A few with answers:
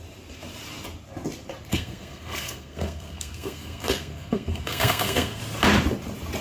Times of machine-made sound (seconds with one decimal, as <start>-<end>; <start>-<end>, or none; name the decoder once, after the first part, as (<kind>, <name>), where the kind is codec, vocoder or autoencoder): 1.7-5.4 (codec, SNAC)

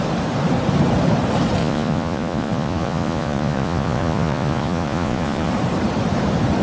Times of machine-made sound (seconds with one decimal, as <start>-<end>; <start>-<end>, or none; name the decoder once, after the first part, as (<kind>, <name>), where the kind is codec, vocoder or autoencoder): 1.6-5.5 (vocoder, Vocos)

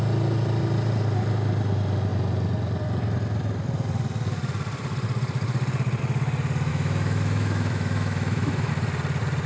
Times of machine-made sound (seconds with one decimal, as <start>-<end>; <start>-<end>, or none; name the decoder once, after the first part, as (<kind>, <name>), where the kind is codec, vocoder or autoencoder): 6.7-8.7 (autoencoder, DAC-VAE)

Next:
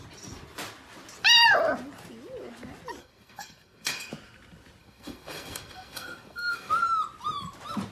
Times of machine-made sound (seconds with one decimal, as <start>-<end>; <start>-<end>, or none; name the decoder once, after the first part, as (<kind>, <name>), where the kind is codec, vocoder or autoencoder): 3.0-4.1 (codec, SNAC); 4.8-6.7

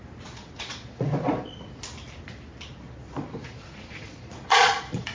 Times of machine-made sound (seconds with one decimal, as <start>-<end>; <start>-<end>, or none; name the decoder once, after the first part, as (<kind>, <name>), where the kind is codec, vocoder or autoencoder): 0.4-1.8 (vocoder, Vocos); 2.7-5.1